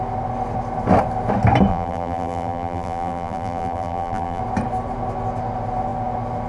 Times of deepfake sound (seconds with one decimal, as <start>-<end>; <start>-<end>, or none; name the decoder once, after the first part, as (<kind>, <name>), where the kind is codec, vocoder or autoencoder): 1.7-4.4 (vocoder, BigVGAN v2)